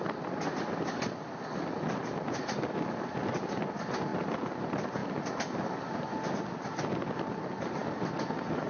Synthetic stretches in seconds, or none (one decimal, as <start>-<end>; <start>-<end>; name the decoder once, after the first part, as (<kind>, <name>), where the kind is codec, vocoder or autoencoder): none